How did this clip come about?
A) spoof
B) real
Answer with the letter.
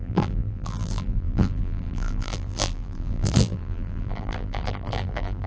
A